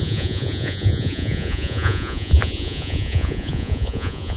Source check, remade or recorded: remade